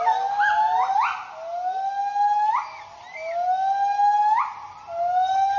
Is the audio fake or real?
real